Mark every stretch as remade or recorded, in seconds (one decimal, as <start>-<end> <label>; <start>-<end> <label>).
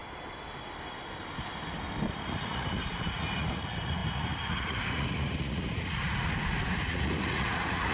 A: 0.0-2.1 recorded; 2.1-7.9 remade